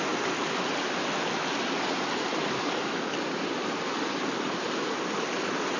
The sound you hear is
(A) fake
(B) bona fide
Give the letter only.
B